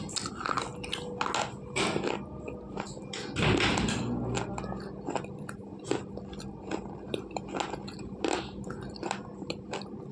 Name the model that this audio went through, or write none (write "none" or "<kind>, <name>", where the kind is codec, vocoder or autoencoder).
none